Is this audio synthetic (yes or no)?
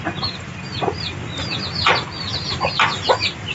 no